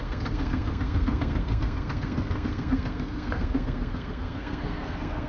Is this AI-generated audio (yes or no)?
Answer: yes